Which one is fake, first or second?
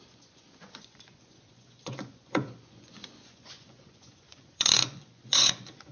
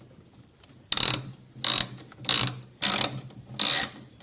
first